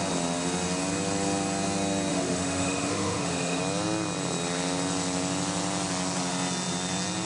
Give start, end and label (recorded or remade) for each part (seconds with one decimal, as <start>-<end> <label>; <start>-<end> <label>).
0.0-2.1 recorded; 2.1-3.6 remade; 3.6-7.3 recorded